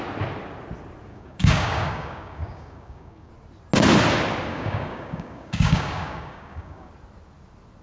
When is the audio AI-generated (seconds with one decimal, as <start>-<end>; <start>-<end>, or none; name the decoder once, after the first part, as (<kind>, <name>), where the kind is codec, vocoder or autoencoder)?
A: 1.1-3.3 (codec, DAC); 4.5-6.9